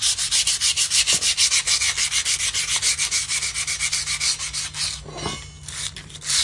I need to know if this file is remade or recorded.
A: recorded